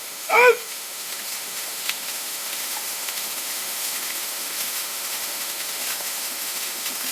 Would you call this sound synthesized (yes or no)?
yes